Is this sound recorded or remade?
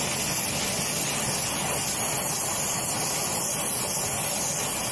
recorded